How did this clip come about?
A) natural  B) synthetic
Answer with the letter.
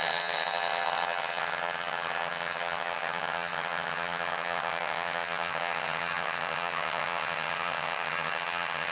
B